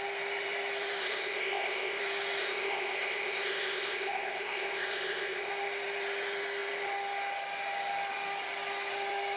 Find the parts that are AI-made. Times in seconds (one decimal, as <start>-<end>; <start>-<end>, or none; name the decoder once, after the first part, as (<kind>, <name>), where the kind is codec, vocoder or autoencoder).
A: 1.0-2.0 (codec, ZipCodec); 2.4-5.5